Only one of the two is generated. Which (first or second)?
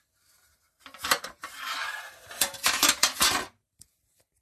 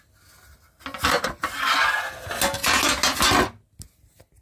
first